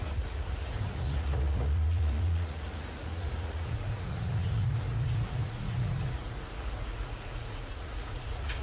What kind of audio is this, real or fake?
fake